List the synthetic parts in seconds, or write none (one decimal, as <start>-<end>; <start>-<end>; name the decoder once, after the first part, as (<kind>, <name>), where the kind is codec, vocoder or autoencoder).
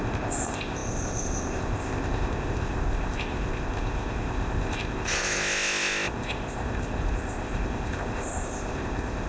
0.0-9.3 (codec, ZipCodec)